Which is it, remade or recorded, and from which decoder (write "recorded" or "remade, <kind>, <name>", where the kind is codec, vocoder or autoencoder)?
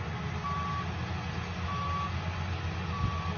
recorded